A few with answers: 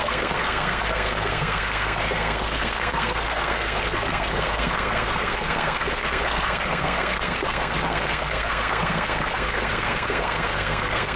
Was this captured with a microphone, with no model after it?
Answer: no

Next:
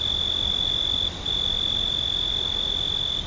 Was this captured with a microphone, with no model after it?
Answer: yes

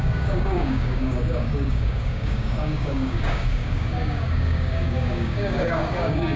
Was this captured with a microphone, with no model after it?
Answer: no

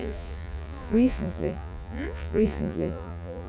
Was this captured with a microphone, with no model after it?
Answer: no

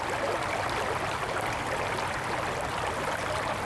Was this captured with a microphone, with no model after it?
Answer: yes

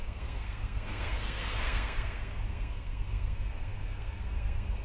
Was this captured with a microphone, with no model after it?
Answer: no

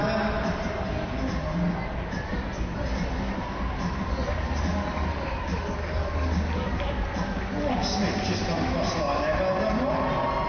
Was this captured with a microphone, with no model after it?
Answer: yes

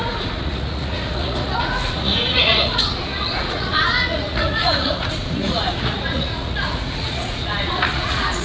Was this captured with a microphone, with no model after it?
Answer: no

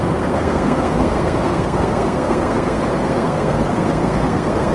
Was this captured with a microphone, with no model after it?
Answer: no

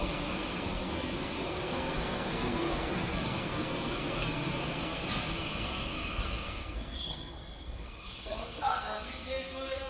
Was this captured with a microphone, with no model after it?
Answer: no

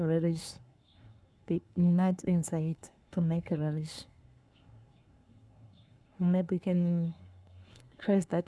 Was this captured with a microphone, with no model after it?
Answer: no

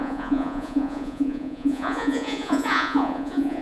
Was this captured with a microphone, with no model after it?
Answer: no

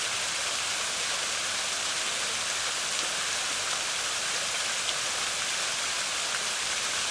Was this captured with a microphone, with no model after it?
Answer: yes